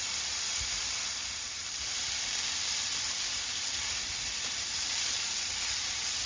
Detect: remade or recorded recorded